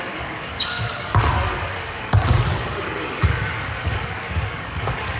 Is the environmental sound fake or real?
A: fake